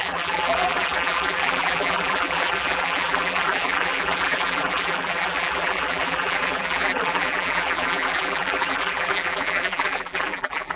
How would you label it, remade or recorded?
remade